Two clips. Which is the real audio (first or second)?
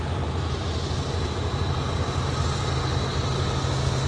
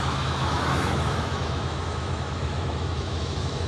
first